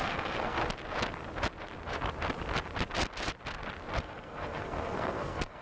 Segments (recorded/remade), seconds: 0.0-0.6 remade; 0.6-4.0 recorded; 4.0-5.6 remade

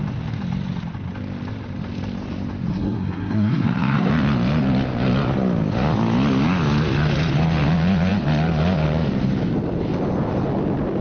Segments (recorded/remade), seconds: 0.0-2.7 recorded; 2.7-4.1 remade; 4.1-11.0 recorded

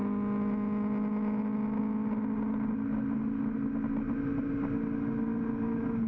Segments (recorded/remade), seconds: 0.0-6.1 recorded

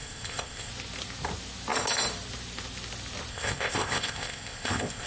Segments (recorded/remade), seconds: 0.0-0.7 remade; 0.7-3.3 recorded; 3.3-5.1 remade

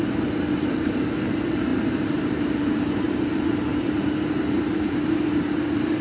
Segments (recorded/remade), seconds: 0.0-6.0 remade

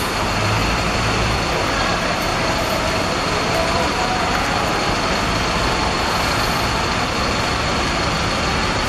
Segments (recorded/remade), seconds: 0.0-0.6 recorded; 0.6-1.5 remade; 1.5-2.3 recorded; 2.3-6.4 remade; 6.4-8.9 recorded

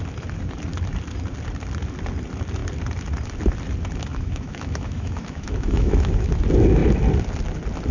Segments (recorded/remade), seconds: 0.0-4.1 recorded; 4.1-6.3 remade; 6.3-7.9 recorded

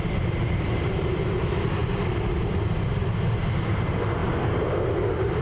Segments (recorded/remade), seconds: 0.0-5.4 recorded